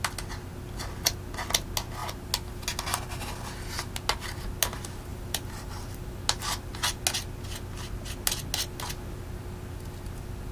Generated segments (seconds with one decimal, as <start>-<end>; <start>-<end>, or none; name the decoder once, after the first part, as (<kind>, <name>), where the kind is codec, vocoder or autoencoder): 5.1-6.2 (vocoder, BigVGAN v2)